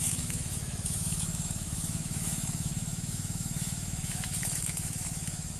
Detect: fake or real fake